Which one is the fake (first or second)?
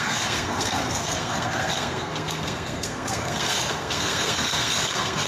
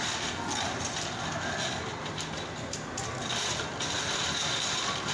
first